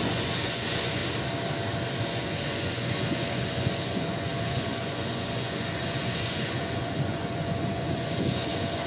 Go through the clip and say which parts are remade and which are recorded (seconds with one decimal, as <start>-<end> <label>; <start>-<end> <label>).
0.0-1.0 remade; 1.0-2.0 recorded; 2.0-8.9 remade